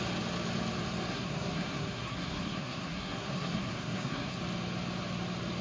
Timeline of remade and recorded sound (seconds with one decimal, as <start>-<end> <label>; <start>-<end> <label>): 0.0-1.1 recorded; 1.1-4.4 remade; 4.4-5.6 recorded